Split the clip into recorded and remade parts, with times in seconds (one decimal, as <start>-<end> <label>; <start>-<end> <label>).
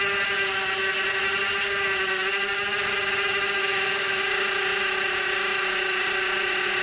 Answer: 0.0-3.6 recorded; 3.6-4.2 remade; 4.2-6.8 recorded